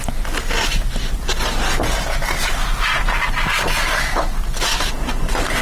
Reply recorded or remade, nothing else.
recorded